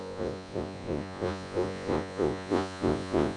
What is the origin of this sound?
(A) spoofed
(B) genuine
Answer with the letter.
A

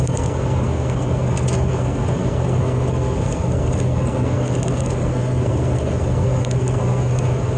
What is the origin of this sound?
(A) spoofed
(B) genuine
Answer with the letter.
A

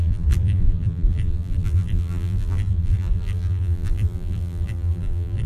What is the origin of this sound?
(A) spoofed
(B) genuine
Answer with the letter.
A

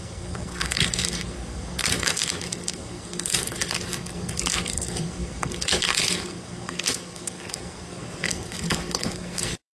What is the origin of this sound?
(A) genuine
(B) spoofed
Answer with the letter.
B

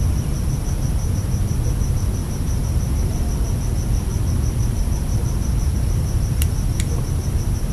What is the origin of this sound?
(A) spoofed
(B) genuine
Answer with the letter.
B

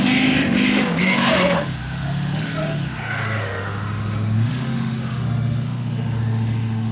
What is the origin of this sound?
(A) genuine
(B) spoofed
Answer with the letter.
B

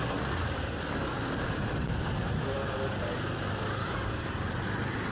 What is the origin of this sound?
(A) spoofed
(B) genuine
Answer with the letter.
B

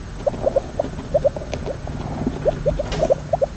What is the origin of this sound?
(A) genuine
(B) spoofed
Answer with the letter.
A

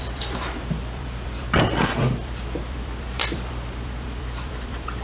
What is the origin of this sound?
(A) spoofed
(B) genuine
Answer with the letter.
A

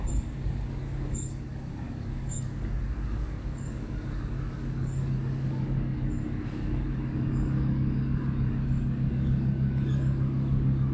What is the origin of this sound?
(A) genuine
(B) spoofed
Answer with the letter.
B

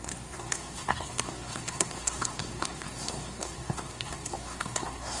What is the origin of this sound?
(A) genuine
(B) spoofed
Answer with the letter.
B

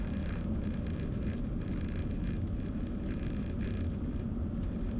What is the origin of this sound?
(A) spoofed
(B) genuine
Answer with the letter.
A